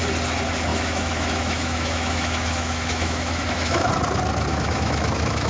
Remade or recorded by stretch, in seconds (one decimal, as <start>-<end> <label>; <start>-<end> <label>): 0.0-0.7 recorded; 0.7-3.9 remade; 3.9-4.5 recorded; 4.5-5.5 remade

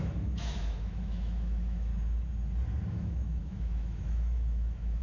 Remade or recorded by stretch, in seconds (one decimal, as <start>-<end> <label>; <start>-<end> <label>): 0.0-1.9 remade; 1.9-2.9 recorded; 2.9-5.0 remade